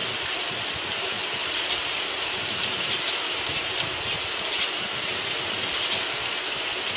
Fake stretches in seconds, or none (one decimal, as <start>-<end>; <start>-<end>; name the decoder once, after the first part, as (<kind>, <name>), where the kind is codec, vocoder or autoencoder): 1.4-5.6 (vocoder, BigVGAN v2)